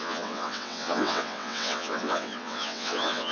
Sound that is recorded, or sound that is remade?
remade